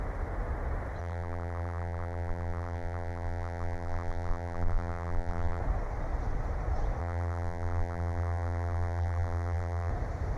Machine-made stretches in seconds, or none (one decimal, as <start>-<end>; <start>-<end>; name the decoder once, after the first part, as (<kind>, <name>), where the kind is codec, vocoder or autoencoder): 1.0-5.6 (vocoder, BigVGAN v2); 7.0-9.9